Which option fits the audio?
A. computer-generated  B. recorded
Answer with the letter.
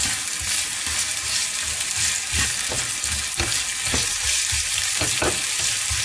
B